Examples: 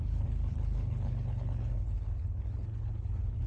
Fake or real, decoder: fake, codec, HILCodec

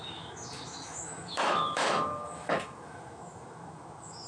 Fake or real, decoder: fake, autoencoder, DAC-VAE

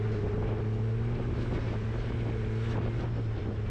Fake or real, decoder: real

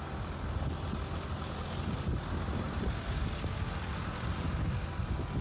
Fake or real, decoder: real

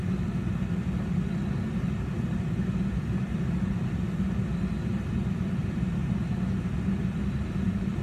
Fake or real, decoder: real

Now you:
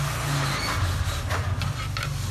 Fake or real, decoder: real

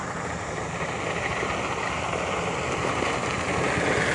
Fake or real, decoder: real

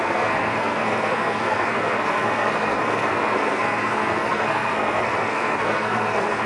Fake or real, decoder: fake, codec, SNAC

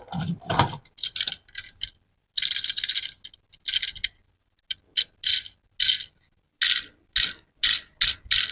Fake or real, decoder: real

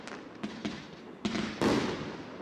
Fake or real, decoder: real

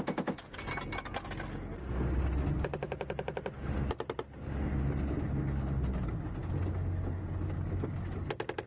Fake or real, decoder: real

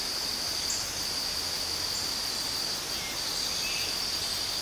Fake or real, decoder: real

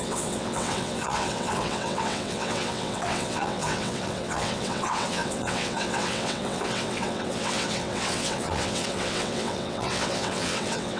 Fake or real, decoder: fake, vocoder, WaveNeXt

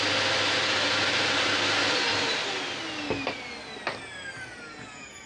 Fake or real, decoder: real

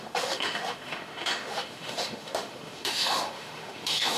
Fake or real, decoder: fake, autoencoder, DAC-VAE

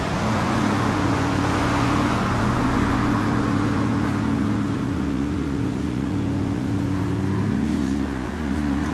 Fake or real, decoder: fake, vocoder, Vocos